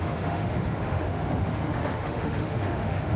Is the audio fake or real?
fake